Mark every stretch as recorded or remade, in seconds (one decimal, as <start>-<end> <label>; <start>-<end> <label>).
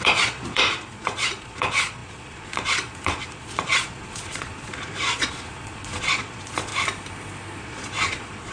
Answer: 0.0-6.7 remade; 6.7-7.6 recorded; 7.6-8.5 remade